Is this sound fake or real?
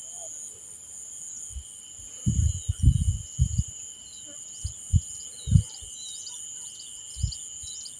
real